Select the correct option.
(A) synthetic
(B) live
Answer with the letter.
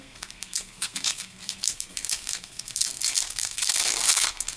A